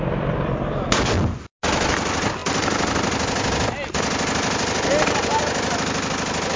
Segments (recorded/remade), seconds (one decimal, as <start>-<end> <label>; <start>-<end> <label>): 0.0-6.6 recorded